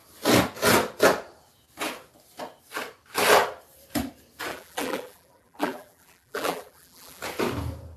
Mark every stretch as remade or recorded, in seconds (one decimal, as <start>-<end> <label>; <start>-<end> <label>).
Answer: 0.0-4.5 recorded; 4.5-7.2 remade; 7.2-8.0 recorded